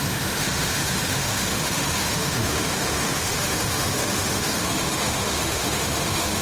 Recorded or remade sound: remade